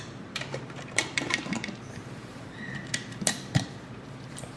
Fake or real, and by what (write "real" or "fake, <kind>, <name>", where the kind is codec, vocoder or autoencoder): fake, vocoder, BigVGAN v2